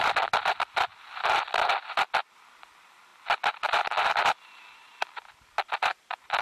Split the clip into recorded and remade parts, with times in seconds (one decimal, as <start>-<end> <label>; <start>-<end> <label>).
0.0-6.4 recorded